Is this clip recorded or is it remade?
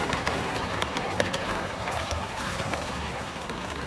remade